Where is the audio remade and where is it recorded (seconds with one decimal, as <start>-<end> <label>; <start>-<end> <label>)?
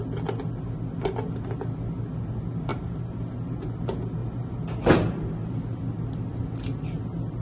0.0-2.7 recorded; 2.7-3.6 remade; 3.6-4.2 recorded; 4.2-5.5 remade; 5.5-7.4 recorded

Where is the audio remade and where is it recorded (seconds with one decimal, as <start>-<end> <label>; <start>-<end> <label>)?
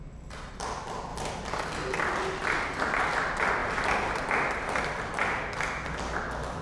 0.0-1.1 remade; 1.1-2.0 recorded; 2.0-3.6 remade; 3.6-4.3 recorded; 4.3-6.6 remade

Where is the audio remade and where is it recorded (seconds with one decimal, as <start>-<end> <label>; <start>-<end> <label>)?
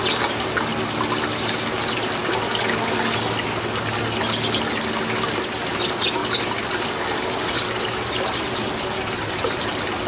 0.0-10.1 recorded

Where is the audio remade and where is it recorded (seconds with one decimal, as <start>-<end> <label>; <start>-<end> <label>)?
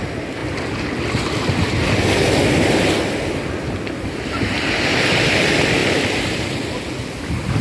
0.0-7.6 recorded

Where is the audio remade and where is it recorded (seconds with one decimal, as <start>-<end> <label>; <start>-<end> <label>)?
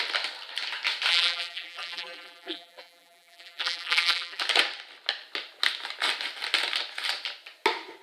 0.0-1.1 recorded; 1.1-4.4 remade; 4.4-8.0 recorded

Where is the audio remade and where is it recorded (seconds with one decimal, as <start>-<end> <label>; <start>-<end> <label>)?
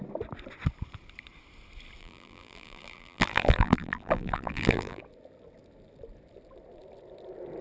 0.0-2.0 recorded; 2.0-5.0 remade; 5.0-7.6 recorded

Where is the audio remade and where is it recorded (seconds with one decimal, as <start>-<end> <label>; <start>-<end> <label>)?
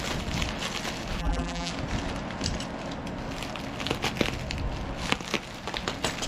0.0-1.2 recorded; 1.2-1.7 remade; 1.7-6.3 recorded